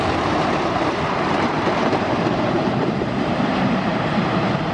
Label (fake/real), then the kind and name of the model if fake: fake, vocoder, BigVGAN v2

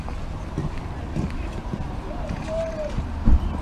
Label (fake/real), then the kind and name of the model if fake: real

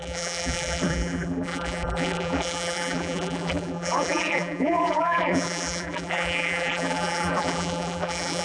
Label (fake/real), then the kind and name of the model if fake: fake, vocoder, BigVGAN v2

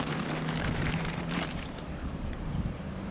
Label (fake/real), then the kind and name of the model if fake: fake, vocoder, BigVGAN v2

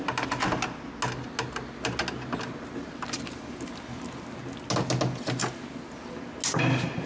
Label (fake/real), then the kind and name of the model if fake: real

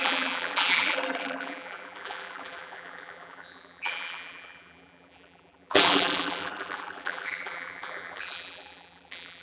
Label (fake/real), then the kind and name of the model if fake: fake, vocoder, BigVGAN v2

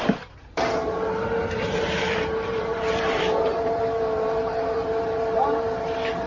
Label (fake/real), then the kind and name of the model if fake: fake, vocoder, BigVGAN v2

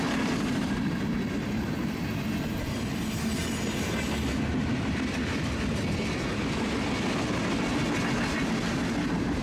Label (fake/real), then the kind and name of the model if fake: real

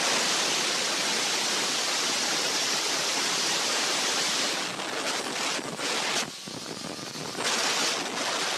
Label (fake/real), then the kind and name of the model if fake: real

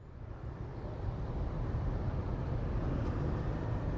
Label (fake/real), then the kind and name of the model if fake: real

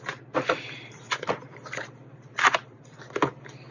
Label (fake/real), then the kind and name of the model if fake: fake, vocoder, BigVGAN v2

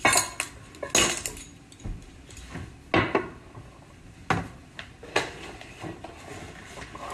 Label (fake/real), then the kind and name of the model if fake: real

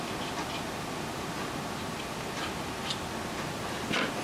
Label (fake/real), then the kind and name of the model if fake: real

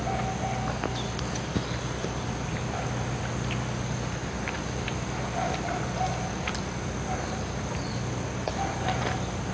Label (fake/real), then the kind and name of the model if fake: real